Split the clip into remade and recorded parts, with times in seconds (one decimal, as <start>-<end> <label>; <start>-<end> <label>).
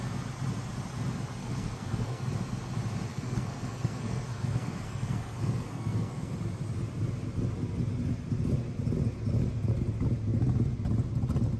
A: 0.0-1.4 recorded; 1.4-2.2 remade; 2.2-3.1 recorded; 3.1-6.3 remade; 6.3-11.6 recorded